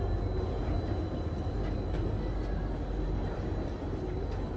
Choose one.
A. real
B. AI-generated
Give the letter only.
A